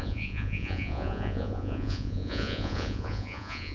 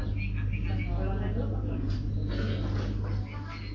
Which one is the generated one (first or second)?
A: first